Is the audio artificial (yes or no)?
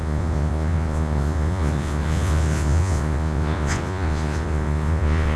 yes